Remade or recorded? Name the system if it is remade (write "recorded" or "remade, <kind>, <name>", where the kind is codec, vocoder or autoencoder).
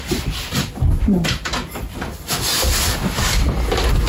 recorded